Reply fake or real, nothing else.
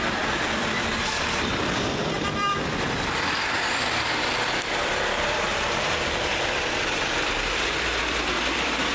fake